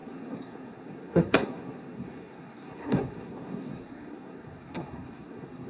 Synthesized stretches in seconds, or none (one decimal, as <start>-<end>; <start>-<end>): 0.0-5.7